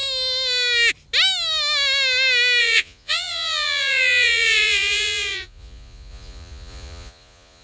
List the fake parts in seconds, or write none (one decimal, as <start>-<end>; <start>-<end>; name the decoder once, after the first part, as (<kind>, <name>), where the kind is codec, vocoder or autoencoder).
2.6-7.6 (vocoder, Vocos)